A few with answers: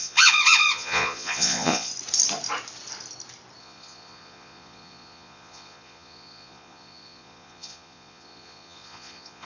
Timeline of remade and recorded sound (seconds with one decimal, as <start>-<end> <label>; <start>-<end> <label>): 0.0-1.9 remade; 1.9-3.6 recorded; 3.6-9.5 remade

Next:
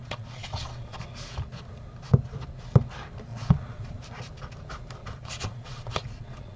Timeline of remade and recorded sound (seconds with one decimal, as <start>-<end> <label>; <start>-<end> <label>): 0.0-1.0 remade; 1.0-3.3 recorded; 3.3-4.0 remade; 4.0-5.0 recorded; 5.0-6.6 remade

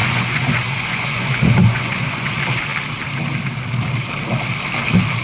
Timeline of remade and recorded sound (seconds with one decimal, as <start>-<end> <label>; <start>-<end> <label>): 0.0-2.3 remade; 2.3-5.2 recorded